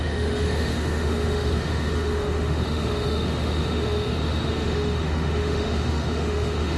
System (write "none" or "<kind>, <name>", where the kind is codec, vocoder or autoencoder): autoencoder, DAC-VAE